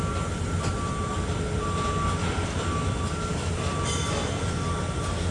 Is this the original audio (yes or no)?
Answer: yes